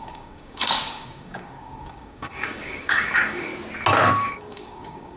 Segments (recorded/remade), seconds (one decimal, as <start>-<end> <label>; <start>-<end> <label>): 0.0-3.5 remade; 3.5-4.1 recorded; 4.1-5.2 remade